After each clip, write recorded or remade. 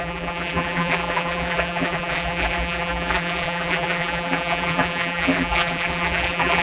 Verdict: remade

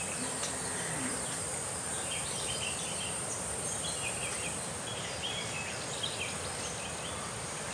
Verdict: recorded